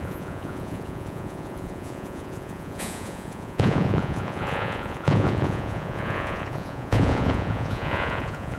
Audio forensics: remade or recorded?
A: remade